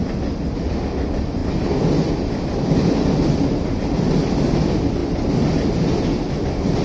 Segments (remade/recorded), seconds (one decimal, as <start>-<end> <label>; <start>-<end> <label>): 0.0-6.8 recorded